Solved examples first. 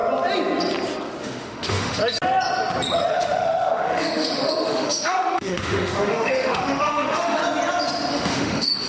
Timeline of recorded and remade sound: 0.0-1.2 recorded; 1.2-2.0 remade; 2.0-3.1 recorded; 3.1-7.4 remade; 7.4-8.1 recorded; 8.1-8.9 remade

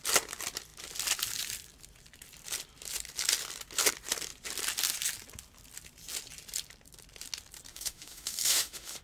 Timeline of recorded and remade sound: 0.0-7.7 recorded; 7.7-9.0 remade

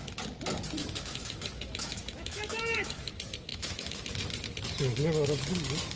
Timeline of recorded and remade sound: 0.0-0.8 recorded; 0.8-3.1 remade; 3.1-3.5 recorded; 3.5-4.0 remade; 4.0-6.0 recorded

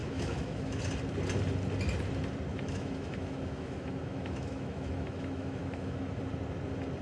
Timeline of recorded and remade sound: 0.0-0.8 remade; 0.8-2.5 recorded; 2.5-6.2 remade; 6.2-7.0 recorded

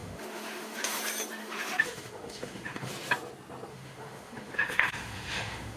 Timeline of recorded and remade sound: 0.0-1.0 remade; 1.0-1.4 recorded; 1.4-2.9 remade; 2.9-3.7 recorded; 3.7-5.8 remade

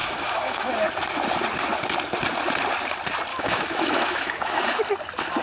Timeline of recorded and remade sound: 0.0-0.7 remade; 0.7-3.3 recorded; 3.3-4.8 remade; 4.8-5.4 recorded

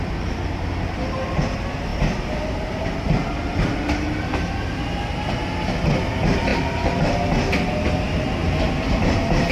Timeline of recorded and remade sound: 0.0-9.5 recorded